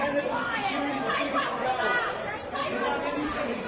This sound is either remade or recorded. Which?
remade